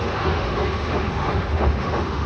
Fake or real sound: fake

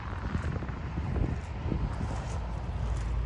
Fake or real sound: real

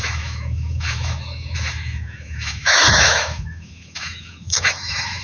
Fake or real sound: fake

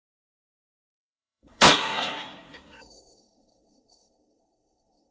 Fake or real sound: fake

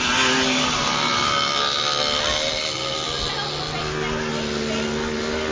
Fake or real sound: real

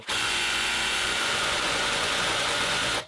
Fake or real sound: fake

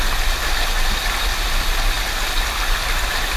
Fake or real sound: real